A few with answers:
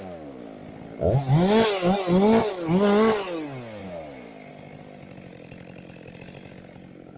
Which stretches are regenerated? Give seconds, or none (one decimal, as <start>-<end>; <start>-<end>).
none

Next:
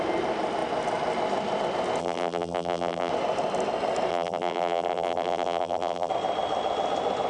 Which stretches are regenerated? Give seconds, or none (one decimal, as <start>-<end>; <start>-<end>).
2.0-3.1; 4.1-6.1

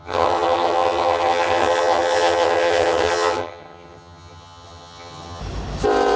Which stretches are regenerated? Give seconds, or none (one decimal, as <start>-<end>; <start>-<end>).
0.0-5.4

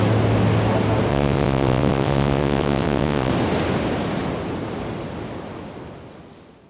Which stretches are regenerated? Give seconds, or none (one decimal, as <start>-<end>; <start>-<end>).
1.1-3.3

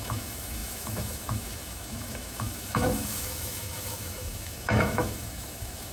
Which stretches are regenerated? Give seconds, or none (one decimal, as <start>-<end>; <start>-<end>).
0.0-5.9